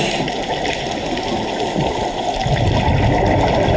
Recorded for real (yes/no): yes